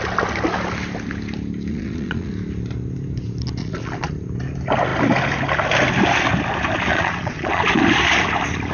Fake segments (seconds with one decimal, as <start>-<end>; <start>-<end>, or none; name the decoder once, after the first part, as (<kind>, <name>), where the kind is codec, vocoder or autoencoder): 1.7-2.3 (vocoder, Vocos); 3.6-4.1; 6.9-7.8